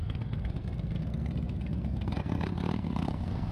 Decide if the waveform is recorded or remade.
remade